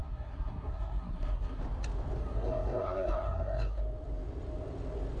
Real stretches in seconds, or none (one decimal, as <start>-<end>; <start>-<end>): 1.6-2.2; 3.8-5.2